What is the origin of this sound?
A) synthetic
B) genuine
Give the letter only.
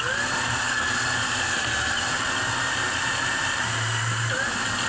B